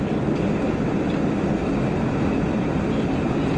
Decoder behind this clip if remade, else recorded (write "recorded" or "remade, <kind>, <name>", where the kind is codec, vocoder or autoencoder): recorded